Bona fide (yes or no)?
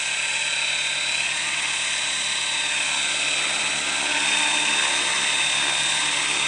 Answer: yes